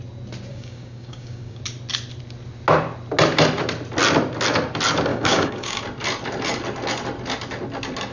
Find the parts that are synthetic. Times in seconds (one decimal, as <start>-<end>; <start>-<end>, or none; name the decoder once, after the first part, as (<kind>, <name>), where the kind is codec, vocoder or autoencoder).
0.5-1.6 (codec, DAC); 5.1-5.8